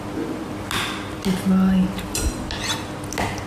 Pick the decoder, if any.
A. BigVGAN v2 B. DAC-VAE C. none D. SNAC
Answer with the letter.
C